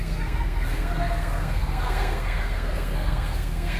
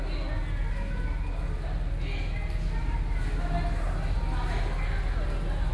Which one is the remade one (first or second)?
first